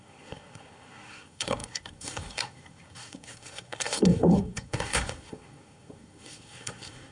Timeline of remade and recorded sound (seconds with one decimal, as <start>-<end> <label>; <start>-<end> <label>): 0.0-7.1 remade